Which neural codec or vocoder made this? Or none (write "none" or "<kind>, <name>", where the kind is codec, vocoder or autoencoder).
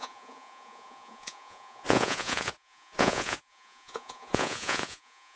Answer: vocoder, Vocos